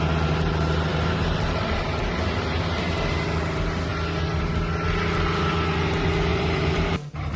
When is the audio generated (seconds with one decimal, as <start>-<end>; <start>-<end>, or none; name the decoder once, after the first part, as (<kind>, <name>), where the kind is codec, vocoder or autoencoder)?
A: 0.9-1.8 (vocoder, BigVGAN v2); 6.3-6.9